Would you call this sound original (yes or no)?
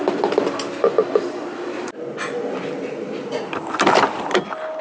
yes